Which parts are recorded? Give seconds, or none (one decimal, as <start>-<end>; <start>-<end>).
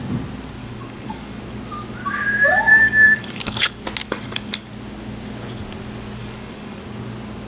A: 0.0-0.6; 1.4-2.7; 3.6-4.0; 4.7-6.2; 6.8-7.5